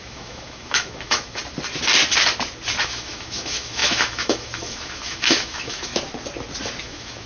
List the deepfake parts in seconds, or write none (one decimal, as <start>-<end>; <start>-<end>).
0.0-1.4; 2.8-5.9; 6.8-7.3